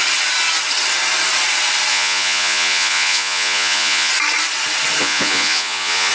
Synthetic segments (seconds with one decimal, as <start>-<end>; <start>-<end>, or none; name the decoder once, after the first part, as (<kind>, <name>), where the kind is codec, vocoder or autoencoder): 1.9-4.1 (vocoder, Vocos); 5.0-6.1